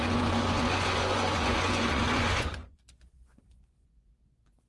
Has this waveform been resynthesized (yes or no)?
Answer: yes